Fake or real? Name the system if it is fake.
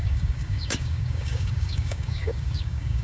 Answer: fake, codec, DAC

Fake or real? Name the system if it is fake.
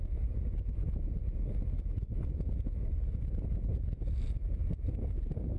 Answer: real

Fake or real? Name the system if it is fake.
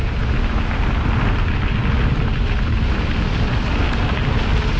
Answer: real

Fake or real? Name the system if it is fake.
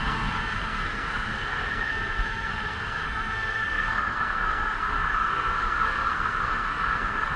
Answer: fake, codec, SNAC